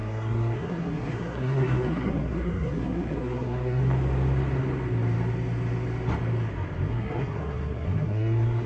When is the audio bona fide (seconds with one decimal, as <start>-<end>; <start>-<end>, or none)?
3.8-6.9